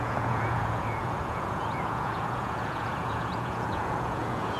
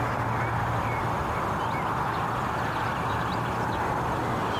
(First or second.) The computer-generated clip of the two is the first